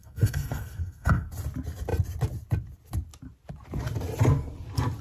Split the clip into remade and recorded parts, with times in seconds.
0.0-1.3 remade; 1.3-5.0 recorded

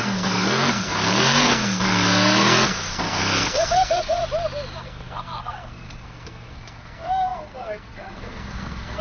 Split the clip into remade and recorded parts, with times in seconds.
0.0-4.2 remade; 4.2-4.8 recorded; 4.8-9.0 remade

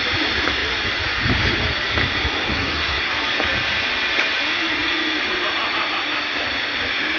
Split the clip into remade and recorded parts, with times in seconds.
0.0-2.5 recorded; 2.5-3.1 remade; 3.1-7.2 recorded